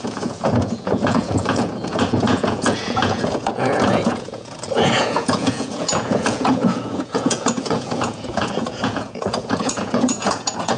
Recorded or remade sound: remade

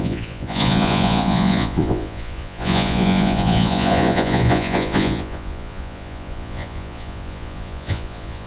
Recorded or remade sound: remade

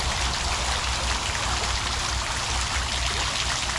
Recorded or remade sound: recorded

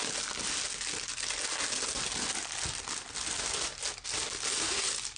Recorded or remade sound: recorded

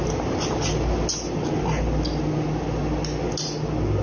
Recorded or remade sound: recorded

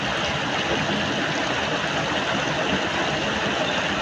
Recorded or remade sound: recorded